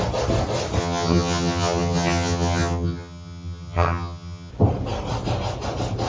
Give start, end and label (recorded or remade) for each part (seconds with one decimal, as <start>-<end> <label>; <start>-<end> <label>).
0.0-0.8 recorded; 0.8-4.5 remade; 4.5-6.1 recorded